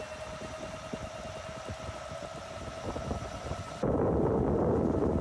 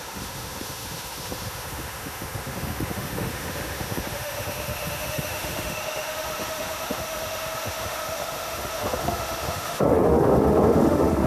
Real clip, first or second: first